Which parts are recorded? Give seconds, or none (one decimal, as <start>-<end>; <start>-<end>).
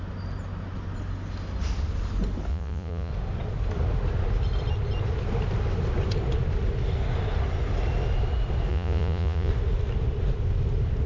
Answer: 0.0-2.5; 3.1-8.7; 9.5-11.1